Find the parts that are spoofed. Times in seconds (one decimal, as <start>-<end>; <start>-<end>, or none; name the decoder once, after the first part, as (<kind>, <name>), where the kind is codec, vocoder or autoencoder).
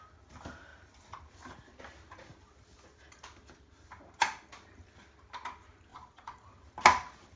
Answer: 5.9-6.5 (vocoder, Vocos)